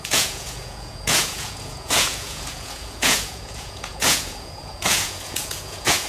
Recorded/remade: remade